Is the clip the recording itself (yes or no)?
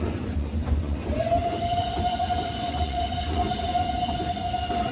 no